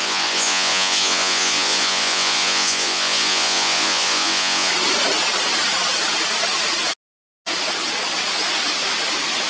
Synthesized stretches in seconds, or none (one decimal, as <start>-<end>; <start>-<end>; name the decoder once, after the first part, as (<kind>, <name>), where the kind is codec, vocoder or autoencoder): 0.0-4.7 (vocoder, Vocos)